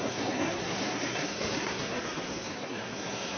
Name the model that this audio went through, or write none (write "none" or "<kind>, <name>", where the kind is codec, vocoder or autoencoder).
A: codec, SNAC